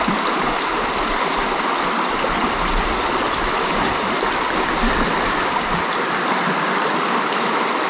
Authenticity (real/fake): fake